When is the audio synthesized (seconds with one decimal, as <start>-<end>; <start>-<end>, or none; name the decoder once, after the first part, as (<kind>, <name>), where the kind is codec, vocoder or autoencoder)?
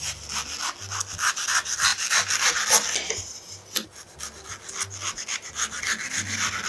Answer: none